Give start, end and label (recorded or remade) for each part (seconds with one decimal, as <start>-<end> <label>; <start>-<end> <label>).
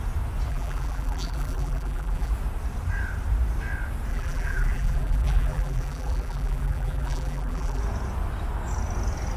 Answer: 0.0-0.5 recorded; 0.5-2.3 remade; 2.3-4.1 recorded; 4.1-7.8 remade; 7.8-9.4 recorded